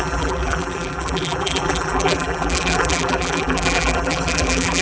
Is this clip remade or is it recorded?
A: remade